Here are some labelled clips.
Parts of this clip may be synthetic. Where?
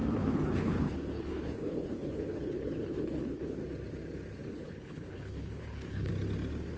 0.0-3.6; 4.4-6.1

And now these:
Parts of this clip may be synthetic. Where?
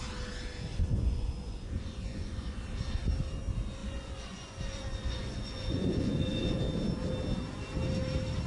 0.7-2.6; 3.8-6.6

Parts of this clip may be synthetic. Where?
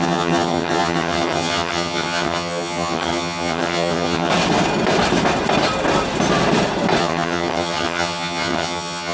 0.0-4.3; 7.0-9.1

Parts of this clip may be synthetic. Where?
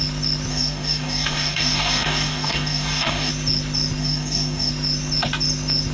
0.5-3.3; 4.0-4.7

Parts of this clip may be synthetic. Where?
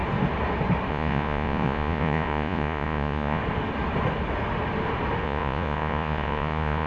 0.9-3.4; 5.2-6.9